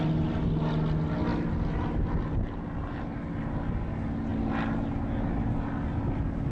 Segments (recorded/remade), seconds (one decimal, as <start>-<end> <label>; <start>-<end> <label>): 0.0-6.5 recorded